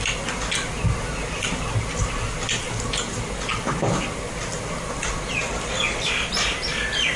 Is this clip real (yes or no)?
yes